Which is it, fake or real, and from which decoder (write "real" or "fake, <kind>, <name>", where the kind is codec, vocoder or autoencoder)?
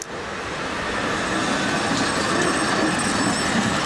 real